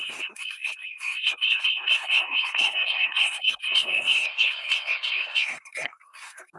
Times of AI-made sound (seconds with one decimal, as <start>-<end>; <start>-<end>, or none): 0.0-6.6